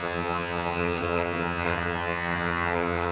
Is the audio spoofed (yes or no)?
yes